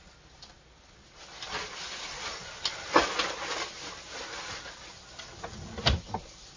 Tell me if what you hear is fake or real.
real